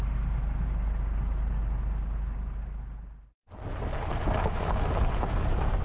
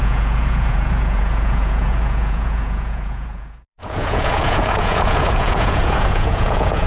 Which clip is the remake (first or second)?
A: second